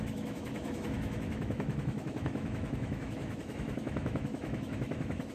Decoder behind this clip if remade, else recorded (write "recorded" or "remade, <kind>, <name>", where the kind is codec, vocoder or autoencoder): remade, autoencoder, DAC-VAE